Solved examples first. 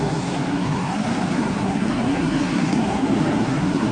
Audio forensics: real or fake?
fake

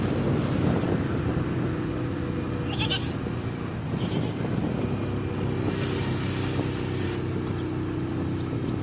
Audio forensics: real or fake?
real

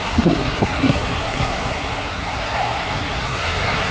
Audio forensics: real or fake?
fake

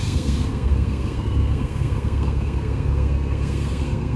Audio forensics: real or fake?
fake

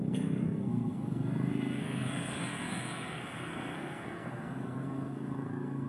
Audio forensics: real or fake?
fake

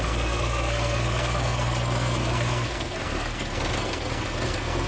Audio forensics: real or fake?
fake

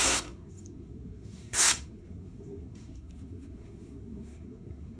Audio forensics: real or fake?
fake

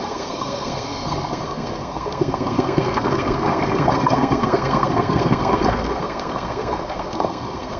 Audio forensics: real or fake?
fake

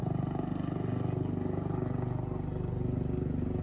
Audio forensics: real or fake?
real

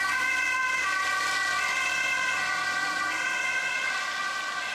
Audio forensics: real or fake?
real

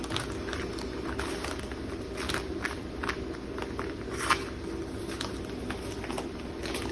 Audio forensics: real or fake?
real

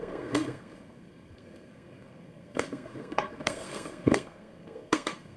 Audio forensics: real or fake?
fake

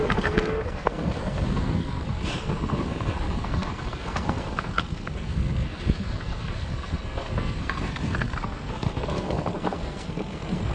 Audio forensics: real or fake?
fake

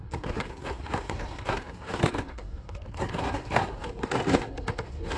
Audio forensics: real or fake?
fake